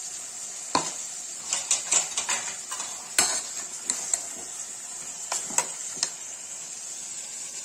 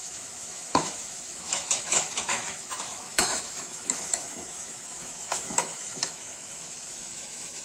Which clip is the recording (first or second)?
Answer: first